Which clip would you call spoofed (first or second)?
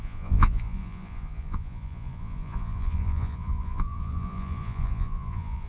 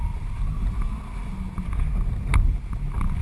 first